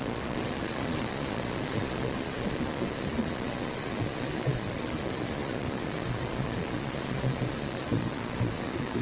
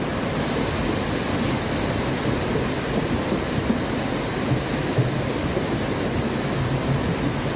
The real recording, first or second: second